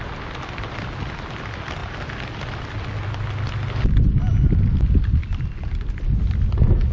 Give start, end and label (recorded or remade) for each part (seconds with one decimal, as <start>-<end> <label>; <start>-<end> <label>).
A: 0.0-6.9 recorded